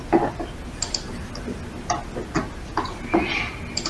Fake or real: real